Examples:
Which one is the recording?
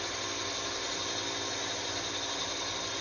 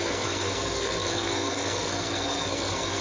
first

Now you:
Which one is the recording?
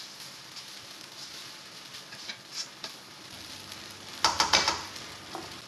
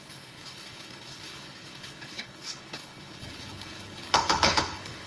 first